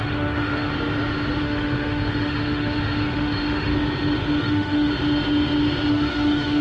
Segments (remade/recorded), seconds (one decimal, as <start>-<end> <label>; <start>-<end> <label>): 0.0-0.7 remade; 0.7-1.4 recorded; 1.4-3.7 remade; 3.7-4.4 recorded; 4.4-4.9 remade; 4.9-5.9 recorded; 5.9-6.6 remade